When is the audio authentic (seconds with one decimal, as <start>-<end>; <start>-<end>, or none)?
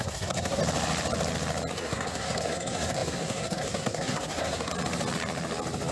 0.6-1.7; 4.7-5.9